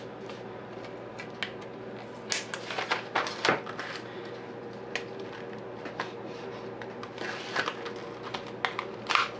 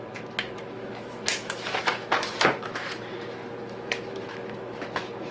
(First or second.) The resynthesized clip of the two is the second